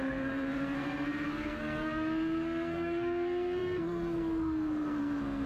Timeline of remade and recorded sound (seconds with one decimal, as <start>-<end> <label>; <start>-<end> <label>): 0.0-5.5 remade